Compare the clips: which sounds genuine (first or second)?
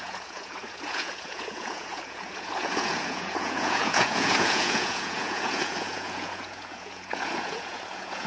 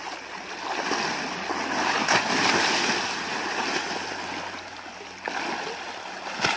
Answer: second